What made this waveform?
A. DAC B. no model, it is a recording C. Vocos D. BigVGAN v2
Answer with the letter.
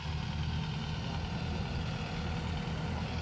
B